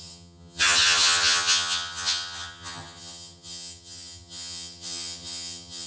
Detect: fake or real fake